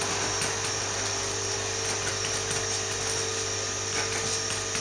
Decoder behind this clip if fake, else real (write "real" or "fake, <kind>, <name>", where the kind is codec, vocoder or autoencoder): real